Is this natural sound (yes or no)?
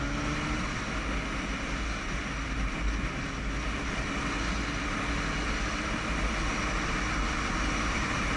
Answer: yes